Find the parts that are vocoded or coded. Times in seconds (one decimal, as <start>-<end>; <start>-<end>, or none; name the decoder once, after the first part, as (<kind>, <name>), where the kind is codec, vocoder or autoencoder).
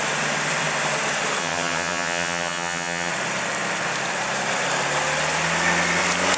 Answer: 1.4-3.1 (vocoder, HiFi-GAN)